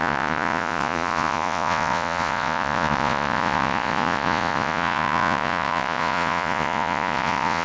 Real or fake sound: fake